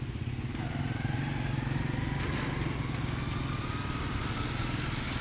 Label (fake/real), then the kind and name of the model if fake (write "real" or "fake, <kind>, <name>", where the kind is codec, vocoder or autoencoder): real